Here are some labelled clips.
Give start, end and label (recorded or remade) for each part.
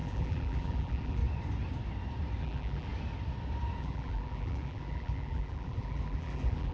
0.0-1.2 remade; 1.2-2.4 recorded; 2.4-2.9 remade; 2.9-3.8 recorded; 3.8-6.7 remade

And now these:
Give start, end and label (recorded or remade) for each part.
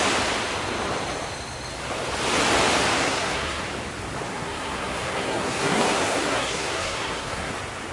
0.0-3.0 recorded; 3.0-3.6 remade; 3.6-4.3 recorded; 4.3-7.5 remade; 7.5-7.9 recorded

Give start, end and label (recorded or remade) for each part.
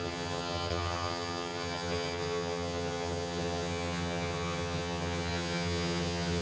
0.0-6.4 remade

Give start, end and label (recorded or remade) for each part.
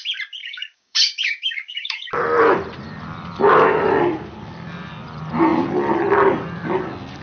0.0-0.4 recorded; 0.4-2.1 remade; 2.1-7.2 recorded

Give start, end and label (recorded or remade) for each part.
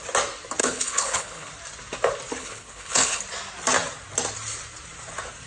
0.0-0.6 recorded; 0.6-1.5 remade; 1.5-2.4 recorded; 2.4-3.2 remade; 3.2-5.5 recorded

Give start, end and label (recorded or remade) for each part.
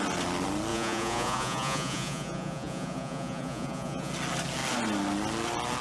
0.0-0.7 recorded; 0.7-4.1 remade; 4.1-5.8 recorded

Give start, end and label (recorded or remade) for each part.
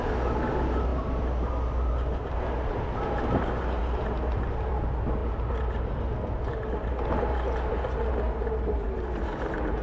0.0-9.8 recorded